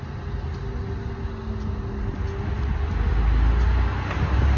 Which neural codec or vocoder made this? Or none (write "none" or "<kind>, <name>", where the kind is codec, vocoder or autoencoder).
none